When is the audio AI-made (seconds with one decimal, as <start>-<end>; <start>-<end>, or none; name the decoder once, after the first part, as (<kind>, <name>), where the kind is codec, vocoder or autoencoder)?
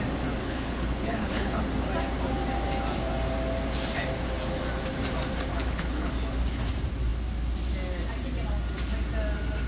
0.4-1.6 (codec, HILCodec); 5.5-6.1